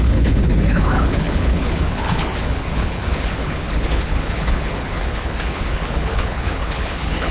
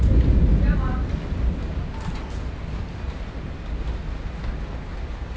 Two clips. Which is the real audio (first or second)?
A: second